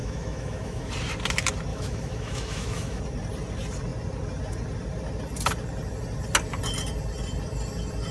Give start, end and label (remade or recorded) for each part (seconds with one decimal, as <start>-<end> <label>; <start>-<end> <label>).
0.0-0.9 remade; 0.9-1.7 recorded; 1.7-3.0 remade; 3.0-8.1 recorded